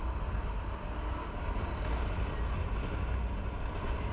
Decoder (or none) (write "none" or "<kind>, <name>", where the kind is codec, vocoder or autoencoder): none